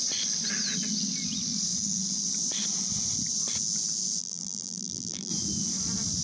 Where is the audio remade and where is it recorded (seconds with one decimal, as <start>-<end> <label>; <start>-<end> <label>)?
0.0-4.2 recorded; 4.2-5.3 remade; 5.3-6.2 recorded